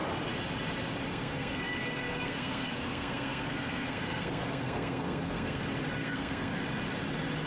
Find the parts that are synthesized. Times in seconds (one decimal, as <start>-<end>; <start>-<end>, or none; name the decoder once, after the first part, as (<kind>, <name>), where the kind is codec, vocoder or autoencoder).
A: 1.1-5.6 (codec, SNAC); 6.0-6.5